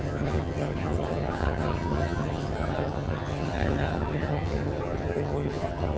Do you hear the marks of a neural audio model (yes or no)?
yes